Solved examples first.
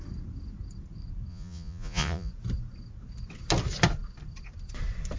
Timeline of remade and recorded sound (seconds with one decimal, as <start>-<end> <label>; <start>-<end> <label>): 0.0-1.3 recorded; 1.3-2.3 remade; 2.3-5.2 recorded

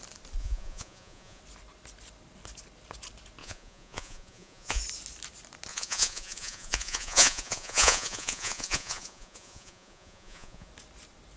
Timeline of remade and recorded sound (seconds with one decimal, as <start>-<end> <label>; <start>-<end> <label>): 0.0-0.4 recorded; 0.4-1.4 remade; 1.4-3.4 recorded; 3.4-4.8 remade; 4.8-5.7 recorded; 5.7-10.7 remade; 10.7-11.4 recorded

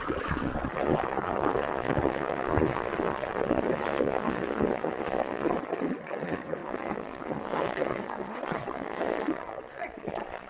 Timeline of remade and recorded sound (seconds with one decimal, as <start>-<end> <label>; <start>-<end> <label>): 0.0-10.5 remade